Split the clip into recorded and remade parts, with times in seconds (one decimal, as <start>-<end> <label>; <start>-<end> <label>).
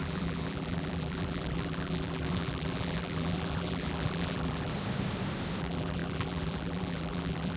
0.0-4.7 remade; 4.7-5.6 recorded; 5.6-7.6 remade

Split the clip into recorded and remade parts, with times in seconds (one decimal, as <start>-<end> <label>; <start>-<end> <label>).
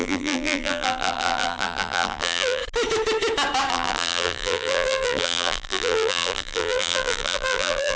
0.0-2.6 remade; 2.6-3.7 recorded; 3.7-8.0 remade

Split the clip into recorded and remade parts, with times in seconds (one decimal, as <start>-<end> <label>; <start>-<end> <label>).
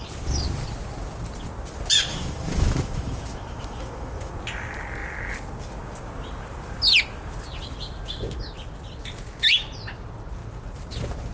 0.0-2.1 recorded; 2.1-4.3 remade; 4.3-11.3 recorded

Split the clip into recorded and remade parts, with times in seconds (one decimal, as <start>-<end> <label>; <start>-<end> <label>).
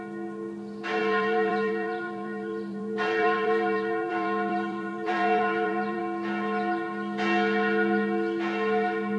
0.0-1.0 recorded; 1.0-6.0 remade; 6.0-9.2 recorded